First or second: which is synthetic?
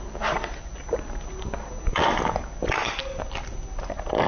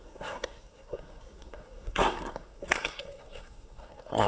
second